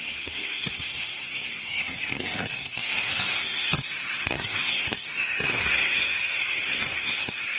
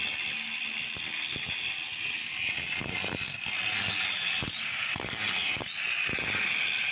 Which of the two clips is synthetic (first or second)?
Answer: first